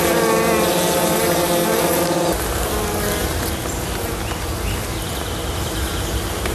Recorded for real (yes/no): yes